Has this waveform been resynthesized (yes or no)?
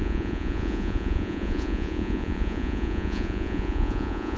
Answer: yes